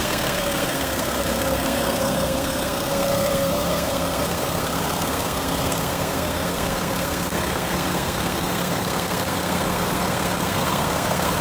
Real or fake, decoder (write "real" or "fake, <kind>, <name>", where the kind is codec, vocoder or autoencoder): fake, codec, SNAC